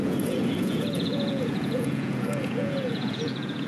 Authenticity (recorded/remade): remade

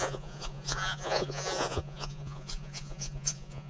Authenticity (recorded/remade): remade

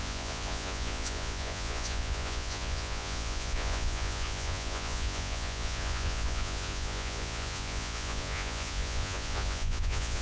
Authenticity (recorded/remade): remade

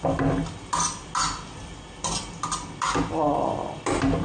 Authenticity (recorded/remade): recorded